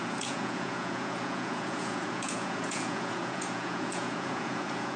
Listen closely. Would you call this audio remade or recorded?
remade